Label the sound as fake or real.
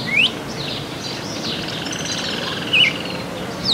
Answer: real